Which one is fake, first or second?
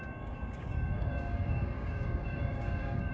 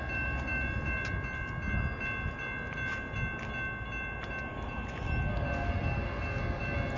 first